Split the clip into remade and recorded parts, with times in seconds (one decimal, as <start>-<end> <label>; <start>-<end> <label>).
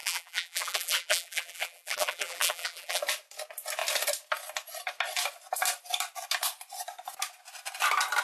0.0-3.0 remade; 3.0-8.2 recorded